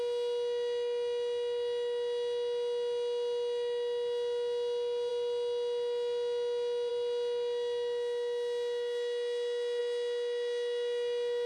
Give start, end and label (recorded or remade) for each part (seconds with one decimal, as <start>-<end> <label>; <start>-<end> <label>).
0.0-11.5 recorded